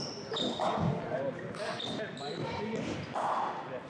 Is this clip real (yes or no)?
yes